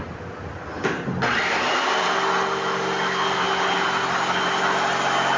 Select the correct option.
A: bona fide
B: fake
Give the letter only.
A